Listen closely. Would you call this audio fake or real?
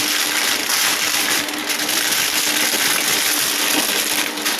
real